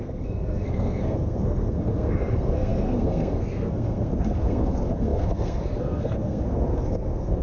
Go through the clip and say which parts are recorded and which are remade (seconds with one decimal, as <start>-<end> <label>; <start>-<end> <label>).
0.0-7.4 remade